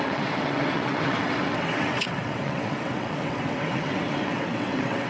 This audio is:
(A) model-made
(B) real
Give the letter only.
A